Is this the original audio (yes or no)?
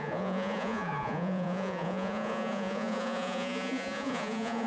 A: no